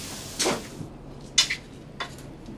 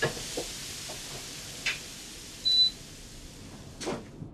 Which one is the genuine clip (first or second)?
first